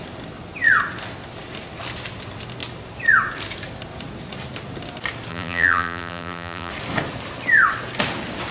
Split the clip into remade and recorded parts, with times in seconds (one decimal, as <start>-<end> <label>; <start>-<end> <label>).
0.0-5.3 recorded; 5.3-6.7 remade; 6.7-8.5 recorded